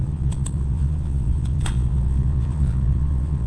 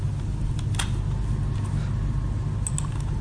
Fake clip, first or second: first